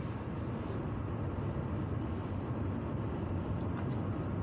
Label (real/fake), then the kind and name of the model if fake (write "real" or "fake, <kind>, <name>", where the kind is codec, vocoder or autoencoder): real